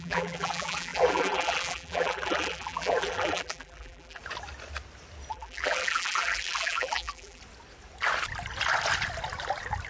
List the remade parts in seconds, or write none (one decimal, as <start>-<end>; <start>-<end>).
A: 0.0-4.2; 5.3-7.4